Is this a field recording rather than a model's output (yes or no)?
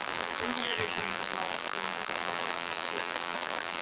no